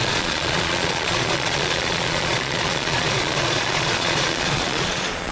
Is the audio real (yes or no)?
no